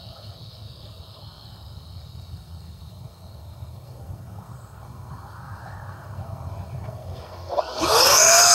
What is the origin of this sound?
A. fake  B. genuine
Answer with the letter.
A